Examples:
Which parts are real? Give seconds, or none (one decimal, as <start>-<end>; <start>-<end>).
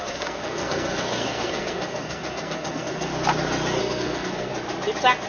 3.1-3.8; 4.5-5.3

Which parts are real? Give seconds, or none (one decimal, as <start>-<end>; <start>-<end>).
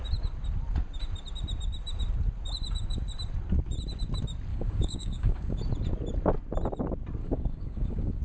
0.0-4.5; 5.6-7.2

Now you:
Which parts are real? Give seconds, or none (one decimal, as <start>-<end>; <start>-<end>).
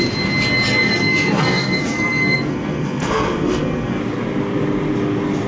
0.0-0.7; 4.0-5.5